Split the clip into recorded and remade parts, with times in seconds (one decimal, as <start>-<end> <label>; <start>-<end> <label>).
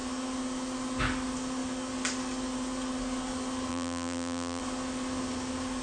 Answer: 0.0-3.7 recorded; 3.7-4.6 remade; 4.6-5.8 recorded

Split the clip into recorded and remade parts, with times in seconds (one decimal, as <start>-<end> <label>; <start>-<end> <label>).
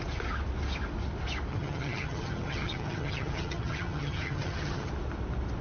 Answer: 0.0-1.5 recorded; 1.5-4.9 remade; 4.9-5.6 recorded